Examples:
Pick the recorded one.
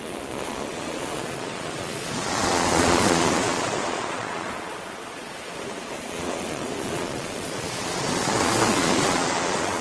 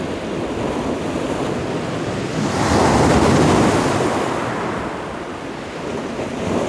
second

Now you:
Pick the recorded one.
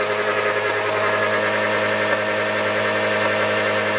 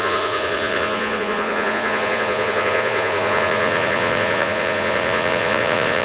first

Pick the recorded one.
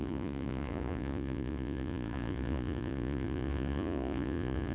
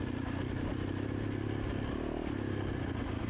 second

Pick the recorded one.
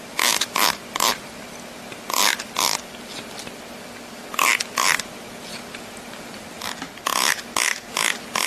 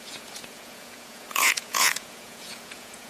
first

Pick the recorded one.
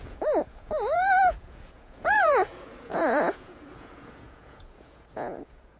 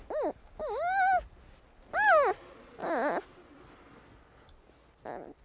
second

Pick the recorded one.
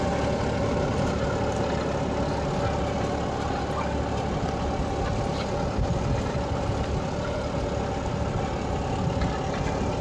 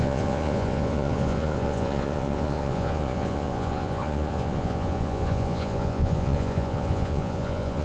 first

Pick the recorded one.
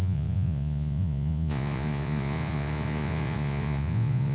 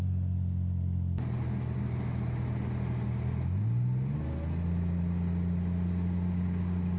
second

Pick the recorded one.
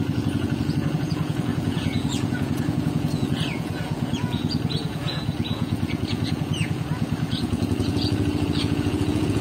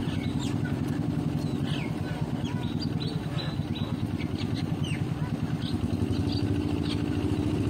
second